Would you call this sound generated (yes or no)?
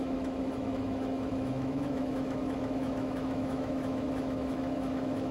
yes